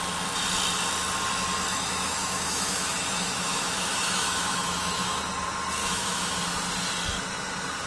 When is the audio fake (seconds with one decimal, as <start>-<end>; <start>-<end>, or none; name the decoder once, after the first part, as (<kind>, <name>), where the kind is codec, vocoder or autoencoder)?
1.7-5.2 (autoencoder, DAC-VAE); 5.8-6.4